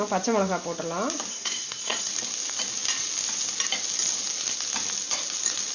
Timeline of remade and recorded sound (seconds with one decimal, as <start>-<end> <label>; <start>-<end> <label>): 0.0-1.3 recorded; 1.3-2.1 remade; 2.1-5.7 recorded